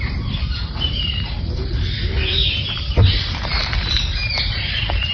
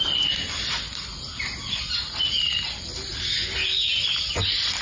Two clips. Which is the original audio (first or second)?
second